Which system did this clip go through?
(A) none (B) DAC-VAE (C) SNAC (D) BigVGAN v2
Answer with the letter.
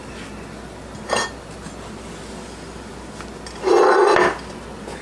A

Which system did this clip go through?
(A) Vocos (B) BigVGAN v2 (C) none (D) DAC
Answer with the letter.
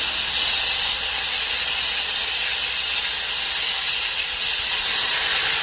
C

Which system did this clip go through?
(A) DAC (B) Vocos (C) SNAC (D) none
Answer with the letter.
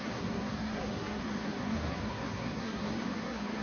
C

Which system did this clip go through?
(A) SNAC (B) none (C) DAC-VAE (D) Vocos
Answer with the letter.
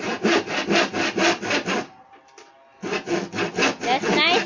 B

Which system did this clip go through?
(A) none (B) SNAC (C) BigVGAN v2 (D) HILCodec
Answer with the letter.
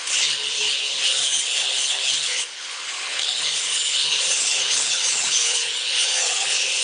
D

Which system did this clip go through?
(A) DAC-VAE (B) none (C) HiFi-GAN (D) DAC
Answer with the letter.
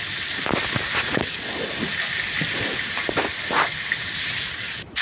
B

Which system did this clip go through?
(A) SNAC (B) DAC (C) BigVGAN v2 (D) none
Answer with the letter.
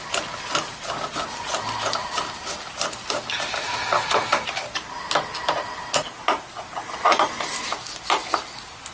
D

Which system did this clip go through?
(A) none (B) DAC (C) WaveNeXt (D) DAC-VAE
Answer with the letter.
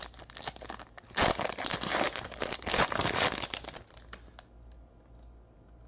A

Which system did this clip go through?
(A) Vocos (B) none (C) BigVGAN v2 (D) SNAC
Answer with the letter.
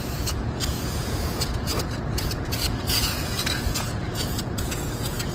A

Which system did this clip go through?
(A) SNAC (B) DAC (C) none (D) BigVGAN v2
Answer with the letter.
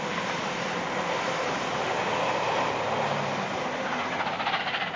C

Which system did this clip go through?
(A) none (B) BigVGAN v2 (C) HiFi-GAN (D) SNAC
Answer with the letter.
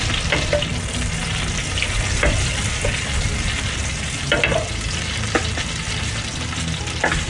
A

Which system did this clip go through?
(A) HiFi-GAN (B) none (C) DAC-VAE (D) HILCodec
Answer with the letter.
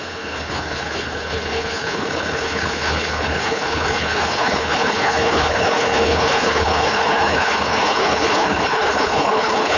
D